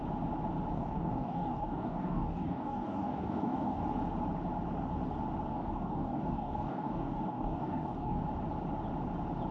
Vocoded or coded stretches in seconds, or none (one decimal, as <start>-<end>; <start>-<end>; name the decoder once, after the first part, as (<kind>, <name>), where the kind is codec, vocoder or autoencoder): 0.7-3.8 (codec, DAC); 5.5-8.2